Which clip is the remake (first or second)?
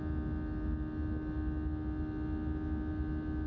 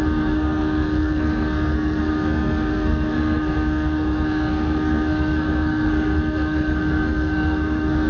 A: second